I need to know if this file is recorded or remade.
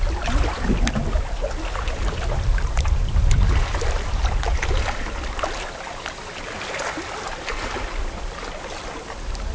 recorded